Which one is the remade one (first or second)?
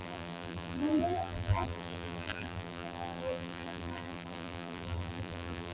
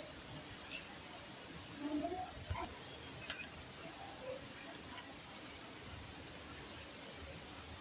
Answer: first